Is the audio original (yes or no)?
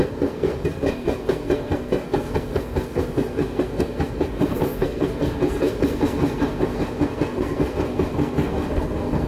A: no